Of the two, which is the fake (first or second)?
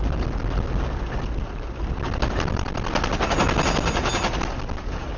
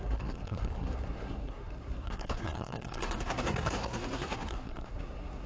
second